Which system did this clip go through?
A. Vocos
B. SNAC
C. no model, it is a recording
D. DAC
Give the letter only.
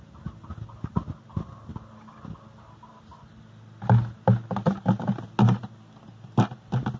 C